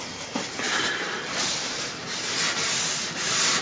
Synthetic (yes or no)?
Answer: no